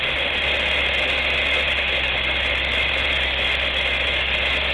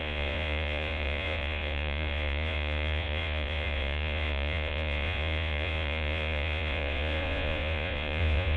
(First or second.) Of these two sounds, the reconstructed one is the second